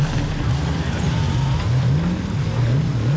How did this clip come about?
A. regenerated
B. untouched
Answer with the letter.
B